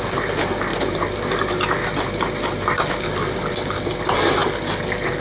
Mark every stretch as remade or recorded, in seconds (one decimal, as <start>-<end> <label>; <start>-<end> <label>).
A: 0.0-5.2 recorded